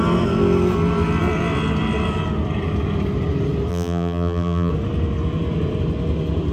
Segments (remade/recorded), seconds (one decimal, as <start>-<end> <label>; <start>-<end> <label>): 0.0-3.7 recorded; 3.7-4.7 remade; 4.7-6.5 recorded